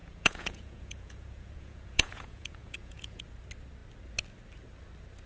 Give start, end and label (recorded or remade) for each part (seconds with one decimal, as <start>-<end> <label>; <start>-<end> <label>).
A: 0.0-3.2 remade; 3.2-5.3 recorded